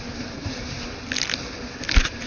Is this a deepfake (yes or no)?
no